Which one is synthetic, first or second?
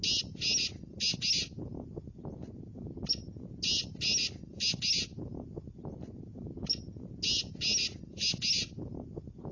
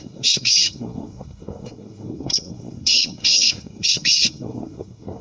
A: second